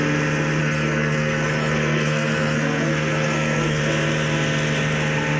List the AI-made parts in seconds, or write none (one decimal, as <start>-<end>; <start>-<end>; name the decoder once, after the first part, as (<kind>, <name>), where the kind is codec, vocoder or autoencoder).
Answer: 0.6-3.8 (codec, SNAC)